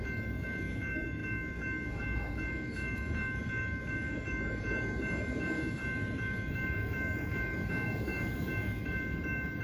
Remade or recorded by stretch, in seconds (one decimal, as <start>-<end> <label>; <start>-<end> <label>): 0.0-5.8 remade; 5.8-6.3 recorded; 6.3-9.6 remade